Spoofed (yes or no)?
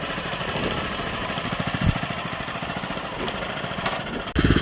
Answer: no